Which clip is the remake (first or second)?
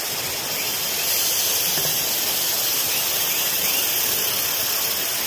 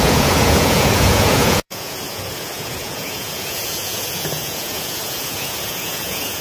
second